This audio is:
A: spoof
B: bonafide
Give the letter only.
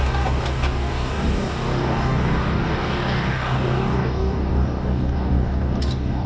A